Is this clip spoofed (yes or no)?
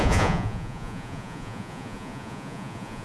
yes